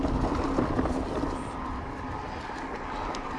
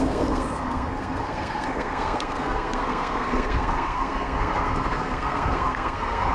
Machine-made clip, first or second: second